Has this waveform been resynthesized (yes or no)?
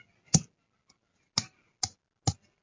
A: no